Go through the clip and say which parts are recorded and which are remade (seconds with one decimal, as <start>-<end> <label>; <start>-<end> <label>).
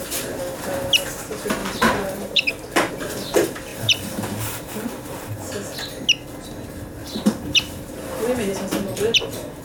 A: 0.0-1.6 recorded; 1.6-2.9 remade; 2.9-3.7 recorded; 3.7-5.0 remade; 5.0-7.0 recorded; 7.0-9.6 remade